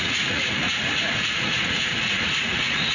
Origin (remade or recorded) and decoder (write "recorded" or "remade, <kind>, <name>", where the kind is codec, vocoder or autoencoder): remade, vocoder, Vocos